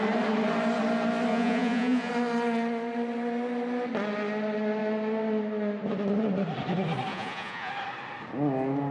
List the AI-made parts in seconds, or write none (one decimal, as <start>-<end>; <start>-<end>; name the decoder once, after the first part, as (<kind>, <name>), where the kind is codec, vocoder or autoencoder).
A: 1.3-2.1 (vocoder, Vocos); 7.1-7.7